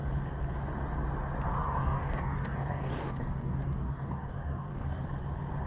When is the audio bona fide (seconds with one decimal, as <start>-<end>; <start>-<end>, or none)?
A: 0.0-1.6; 5.0-5.7